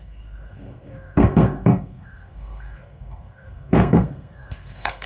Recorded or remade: remade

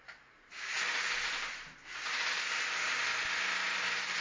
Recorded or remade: remade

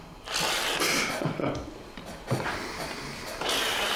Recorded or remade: recorded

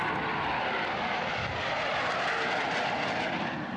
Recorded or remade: recorded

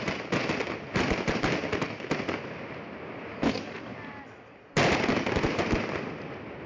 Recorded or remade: recorded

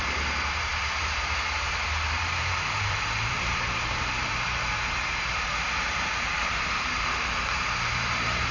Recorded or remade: remade